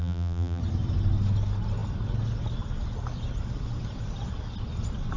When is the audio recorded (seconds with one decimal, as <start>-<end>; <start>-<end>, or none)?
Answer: 0.6-5.2